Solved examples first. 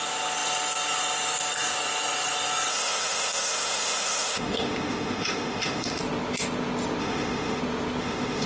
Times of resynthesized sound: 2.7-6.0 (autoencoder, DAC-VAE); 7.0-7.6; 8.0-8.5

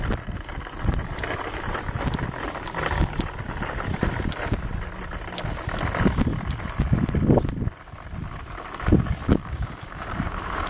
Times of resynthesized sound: 9.2-10.7 (codec, DAC)

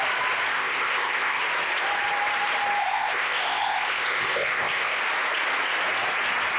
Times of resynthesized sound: 0.5-1.4 (codec, ZipCodec); 2.8-5.0